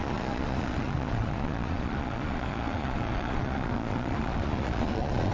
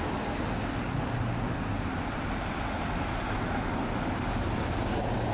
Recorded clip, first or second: second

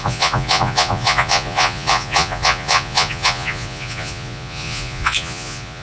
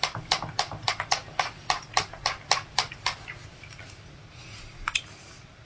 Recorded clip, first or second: second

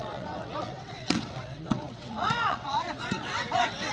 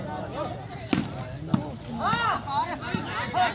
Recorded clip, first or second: second